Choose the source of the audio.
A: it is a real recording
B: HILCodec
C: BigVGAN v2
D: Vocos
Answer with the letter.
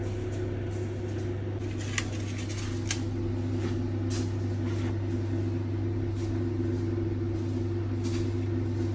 A